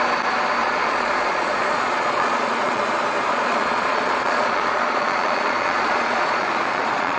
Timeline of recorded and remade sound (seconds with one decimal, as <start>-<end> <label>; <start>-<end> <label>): 0.0-0.6 recorded; 0.6-2.8 remade; 2.8-3.3 recorded; 3.3-7.2 remade